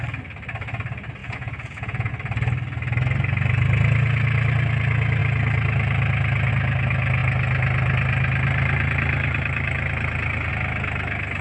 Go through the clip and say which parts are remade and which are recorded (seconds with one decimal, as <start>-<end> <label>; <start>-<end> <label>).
0.0-1.2 recorded; 1.2-2.1 remade; 2.1-11.4 recorded